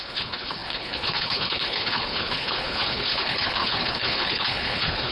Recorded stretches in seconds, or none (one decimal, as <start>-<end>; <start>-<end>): none